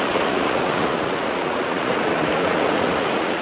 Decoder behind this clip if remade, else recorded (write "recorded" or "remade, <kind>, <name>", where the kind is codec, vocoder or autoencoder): remade, vocoder, Vocos